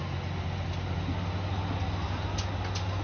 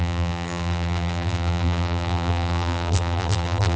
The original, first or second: first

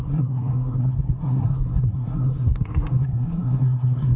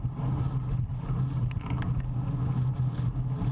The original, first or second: second